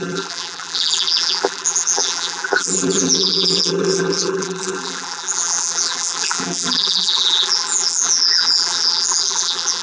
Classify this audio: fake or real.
fake